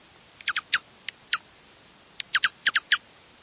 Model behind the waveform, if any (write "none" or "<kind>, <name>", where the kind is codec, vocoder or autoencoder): none